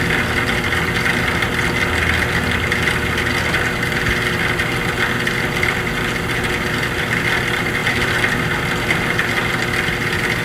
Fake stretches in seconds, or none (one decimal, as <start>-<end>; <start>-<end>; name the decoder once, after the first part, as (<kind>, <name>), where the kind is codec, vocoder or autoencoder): none